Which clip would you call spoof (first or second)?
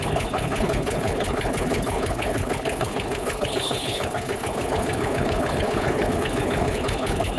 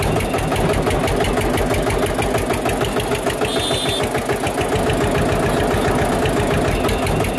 first